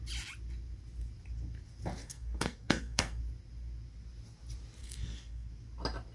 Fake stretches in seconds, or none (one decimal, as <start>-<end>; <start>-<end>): 2.0-3.2; 4.8-5.5